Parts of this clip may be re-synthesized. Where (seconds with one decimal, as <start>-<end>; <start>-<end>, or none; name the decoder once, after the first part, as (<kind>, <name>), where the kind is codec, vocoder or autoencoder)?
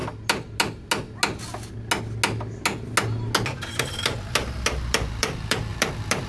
3.8-6.3 (vocoder, BigVGAN v2)